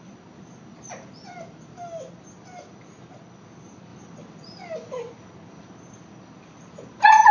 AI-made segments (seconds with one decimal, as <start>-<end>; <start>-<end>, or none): none